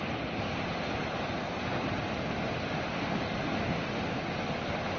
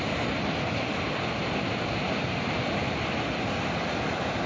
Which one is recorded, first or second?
second